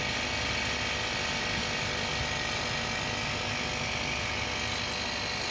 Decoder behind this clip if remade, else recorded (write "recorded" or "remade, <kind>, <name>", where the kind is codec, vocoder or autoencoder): recorded